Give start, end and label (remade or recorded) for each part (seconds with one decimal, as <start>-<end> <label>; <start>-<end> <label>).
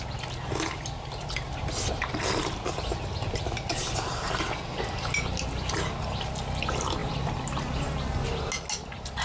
0.0-9.2 recorded